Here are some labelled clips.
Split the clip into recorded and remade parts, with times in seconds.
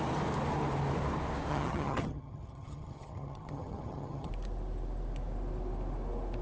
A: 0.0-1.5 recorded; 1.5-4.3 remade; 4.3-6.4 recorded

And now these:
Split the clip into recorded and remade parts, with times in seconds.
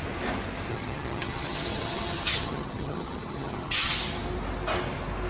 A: 0.0-0.7 recorded; 0.7-3.9 remade; 3.9-5.3 recorded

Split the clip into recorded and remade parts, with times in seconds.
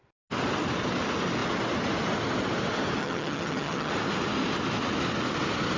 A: 0.0-3.0 recorded; 3.0-3.9 remade; 3.9-5.8 recorded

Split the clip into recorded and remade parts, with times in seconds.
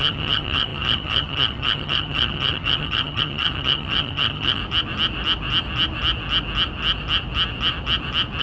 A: 0.0-4.6 remade; 4.6-8.4 recorded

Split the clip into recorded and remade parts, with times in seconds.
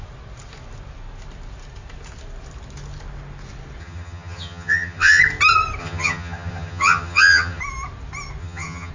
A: 0.0-3.8 recorded; 3.8-5.2 remade; 5.2-5.8 recorded; 5.8-7.6 remade; 7.6-8.4 recorded; 8.4-8.9 remade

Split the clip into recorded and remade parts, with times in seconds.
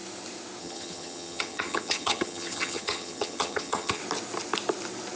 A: 0.0-0.6 recorded; 0.6-4.0 remade; 4.0-5.2 recorded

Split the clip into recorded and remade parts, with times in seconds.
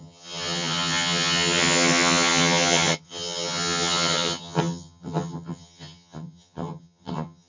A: 0.0-7.5 remade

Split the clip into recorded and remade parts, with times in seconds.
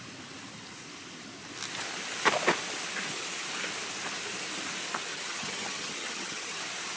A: 0.0-5.1 recorded; 5.1-6.6 remade; 6.6-7.0 recorded